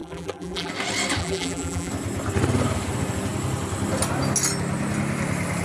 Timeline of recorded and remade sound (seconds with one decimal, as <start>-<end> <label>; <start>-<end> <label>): 0.0-0.7 remade; 0.7-1.2 recorded; 1.2-1.9 remade; 1.9-5.6 recorded